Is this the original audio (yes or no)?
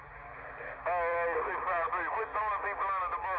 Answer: yes